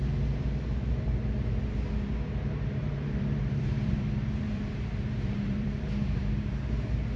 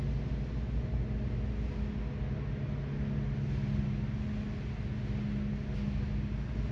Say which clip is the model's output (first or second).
first